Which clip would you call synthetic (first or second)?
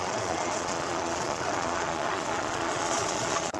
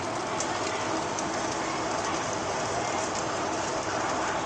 first